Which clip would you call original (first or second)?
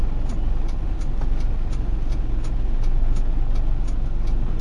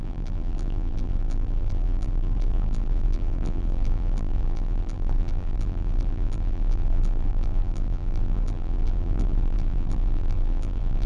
first